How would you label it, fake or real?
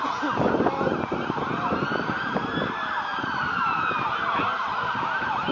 real